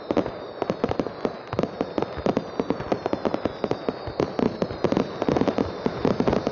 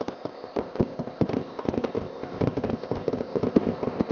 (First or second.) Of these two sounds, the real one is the first